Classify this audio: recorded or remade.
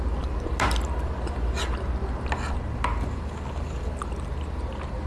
recorded